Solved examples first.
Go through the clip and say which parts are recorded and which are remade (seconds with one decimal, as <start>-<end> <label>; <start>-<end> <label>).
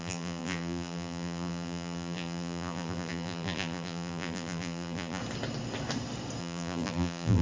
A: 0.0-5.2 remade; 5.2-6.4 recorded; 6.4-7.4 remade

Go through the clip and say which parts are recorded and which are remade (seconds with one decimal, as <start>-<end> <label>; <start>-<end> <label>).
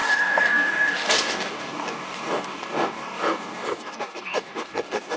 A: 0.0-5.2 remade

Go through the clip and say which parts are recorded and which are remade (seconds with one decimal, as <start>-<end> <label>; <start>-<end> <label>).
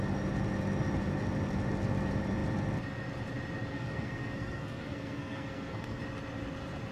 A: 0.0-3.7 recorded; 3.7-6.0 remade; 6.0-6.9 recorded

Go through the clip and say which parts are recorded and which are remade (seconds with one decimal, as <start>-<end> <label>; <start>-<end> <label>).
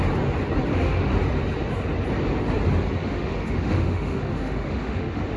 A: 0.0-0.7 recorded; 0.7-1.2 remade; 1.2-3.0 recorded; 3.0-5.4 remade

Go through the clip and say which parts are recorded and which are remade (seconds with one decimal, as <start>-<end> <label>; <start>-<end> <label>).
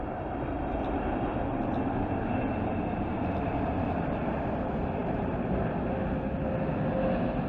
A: 0.0-5.0 recorded; 5.0-5.6 remade; 5.6-7.5 recorded